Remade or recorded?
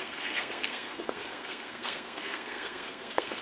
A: remade